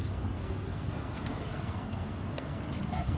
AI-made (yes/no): yes